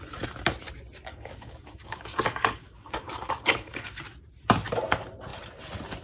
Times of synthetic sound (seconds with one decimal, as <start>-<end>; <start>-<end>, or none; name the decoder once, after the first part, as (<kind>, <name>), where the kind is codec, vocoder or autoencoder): 1.1-4.0 (codec, DAC)

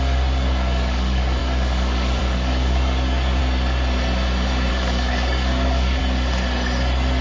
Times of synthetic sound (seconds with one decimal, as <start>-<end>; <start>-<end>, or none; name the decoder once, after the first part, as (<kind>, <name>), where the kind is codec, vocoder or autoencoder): 0.0-3.4 (codec, DAC); 4.7-6.0

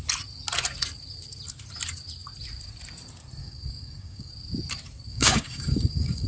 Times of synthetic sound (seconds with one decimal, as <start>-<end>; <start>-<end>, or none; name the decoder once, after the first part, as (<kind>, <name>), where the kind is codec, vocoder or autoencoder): 3.4-4.3 (codec, DAC); 5.1-6.3